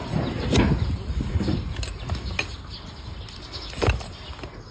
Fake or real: real